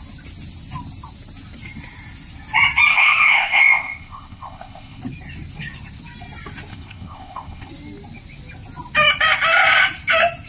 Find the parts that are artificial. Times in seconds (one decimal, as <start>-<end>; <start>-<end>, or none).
2.9-5.0; 6.7-7.7